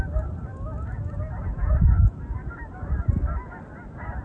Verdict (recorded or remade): recorded